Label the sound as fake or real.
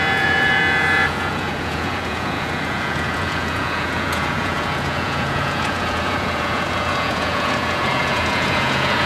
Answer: fake